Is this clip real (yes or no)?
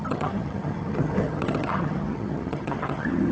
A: no